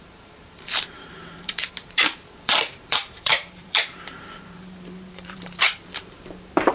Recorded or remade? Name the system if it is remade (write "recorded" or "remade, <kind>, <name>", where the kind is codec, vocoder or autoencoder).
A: remade, vocoder, BigVGAN v2